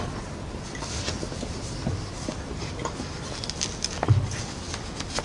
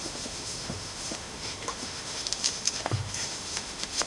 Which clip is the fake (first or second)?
second